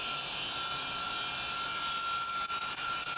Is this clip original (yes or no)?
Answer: yes